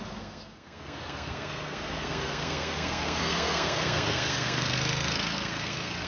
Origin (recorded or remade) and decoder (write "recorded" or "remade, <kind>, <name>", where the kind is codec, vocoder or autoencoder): remade, codec, SNAC